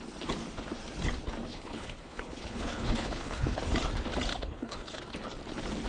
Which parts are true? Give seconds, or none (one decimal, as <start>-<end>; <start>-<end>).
0.0-1.5; 3.6-4.3; 5.0-5.9